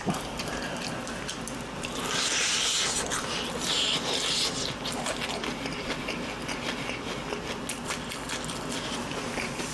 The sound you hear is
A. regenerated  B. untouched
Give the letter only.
B